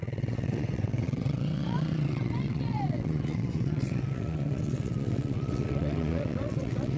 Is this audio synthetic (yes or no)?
yes